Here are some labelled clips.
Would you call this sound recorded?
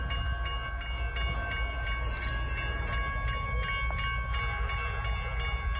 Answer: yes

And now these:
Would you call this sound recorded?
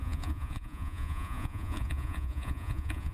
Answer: no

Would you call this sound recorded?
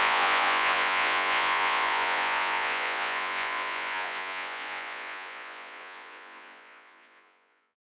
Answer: no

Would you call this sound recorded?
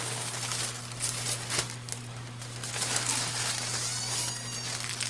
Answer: yes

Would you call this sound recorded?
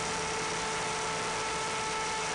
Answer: yes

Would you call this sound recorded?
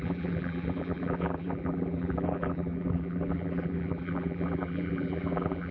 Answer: no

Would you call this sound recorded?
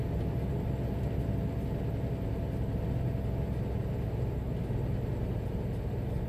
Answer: yes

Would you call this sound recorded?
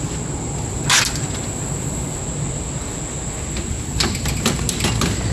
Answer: yes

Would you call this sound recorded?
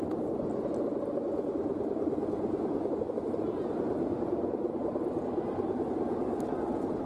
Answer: yes